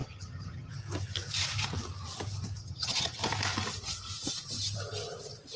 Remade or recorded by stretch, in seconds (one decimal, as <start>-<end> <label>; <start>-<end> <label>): 0.0-0.7 remade; 0.7-2.6 recorded; 2.6-3.2 remade; 3.2-5.6 recorded